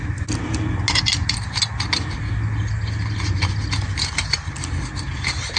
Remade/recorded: recorded